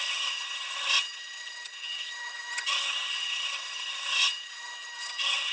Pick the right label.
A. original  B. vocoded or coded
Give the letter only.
B